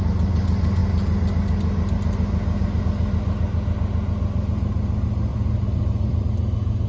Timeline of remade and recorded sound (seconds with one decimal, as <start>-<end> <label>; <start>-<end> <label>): 0.0-5.3 recorded; 5.3-6.2 remade; 6.2-6.9 recorded